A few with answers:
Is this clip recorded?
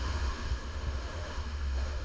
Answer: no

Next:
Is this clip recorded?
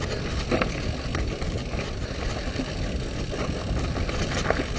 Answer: yes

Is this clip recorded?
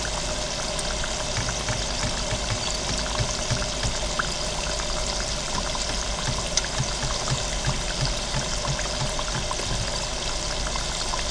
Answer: yes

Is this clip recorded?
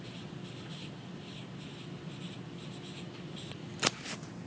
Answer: yes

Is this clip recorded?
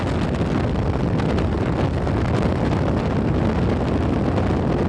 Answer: yes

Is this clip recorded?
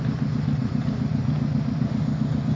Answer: yes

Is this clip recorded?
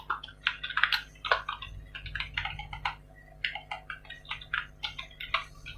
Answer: yes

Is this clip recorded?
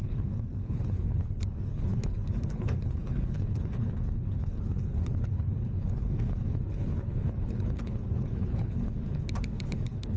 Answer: no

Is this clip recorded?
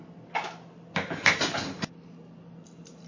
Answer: yes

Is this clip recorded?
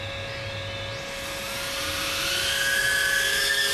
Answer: yes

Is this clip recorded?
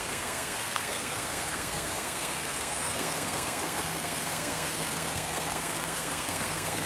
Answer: no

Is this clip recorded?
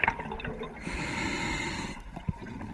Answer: yes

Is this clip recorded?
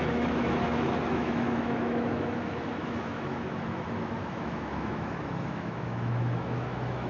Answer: no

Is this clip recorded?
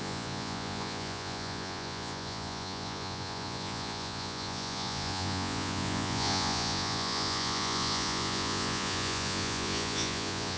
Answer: no